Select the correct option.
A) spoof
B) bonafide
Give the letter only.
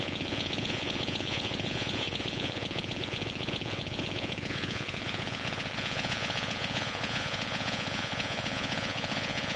A